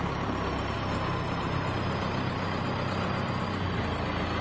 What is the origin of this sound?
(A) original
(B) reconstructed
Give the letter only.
A